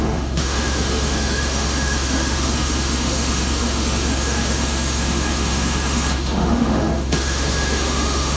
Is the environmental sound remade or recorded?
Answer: remade